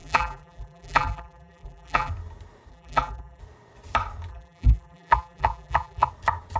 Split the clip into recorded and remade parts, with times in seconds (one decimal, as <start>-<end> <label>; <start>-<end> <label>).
0.0-2.1 remade; 2.1-2.7 recorded; 2.7-3.4 remade; 3.4-4.3 recorded; 4.3-6.1 remade; 6.1-6.6 recorded